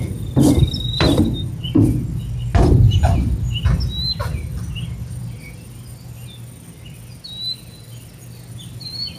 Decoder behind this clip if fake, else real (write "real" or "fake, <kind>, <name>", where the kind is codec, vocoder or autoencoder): real